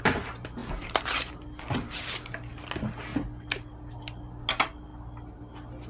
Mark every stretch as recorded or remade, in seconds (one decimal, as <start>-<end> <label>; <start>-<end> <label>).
0.0-0.6 recorded; 0.6-1.6 remade; 1.6-5.9 recorded